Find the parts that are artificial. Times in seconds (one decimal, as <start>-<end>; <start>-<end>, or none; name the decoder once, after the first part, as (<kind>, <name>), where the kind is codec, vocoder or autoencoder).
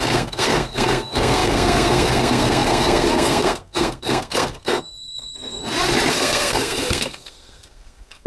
0.0-5.6 (codec, SNAC); 6.1-8.3